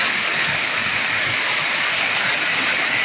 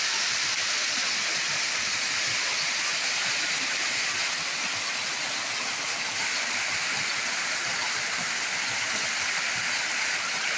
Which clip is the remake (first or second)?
first